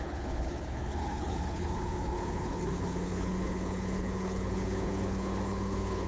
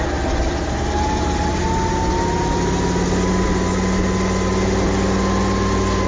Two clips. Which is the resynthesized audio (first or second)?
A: first